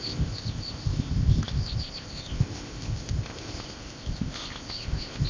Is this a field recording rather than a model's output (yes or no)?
no